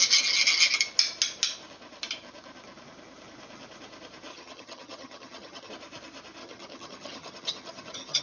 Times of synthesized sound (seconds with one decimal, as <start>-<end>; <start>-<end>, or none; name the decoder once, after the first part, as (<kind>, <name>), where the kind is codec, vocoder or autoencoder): 4.3-5.7 (vocoder, HiFi-GAN); 6.4-8.2